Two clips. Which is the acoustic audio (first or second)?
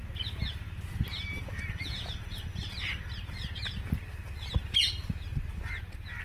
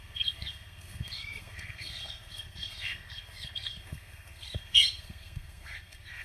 first